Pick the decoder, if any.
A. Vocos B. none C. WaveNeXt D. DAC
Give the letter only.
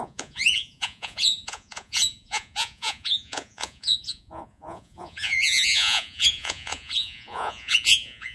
A